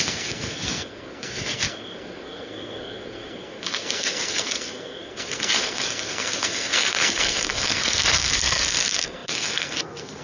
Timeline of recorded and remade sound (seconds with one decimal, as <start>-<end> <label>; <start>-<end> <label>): 0.0-10.2 remade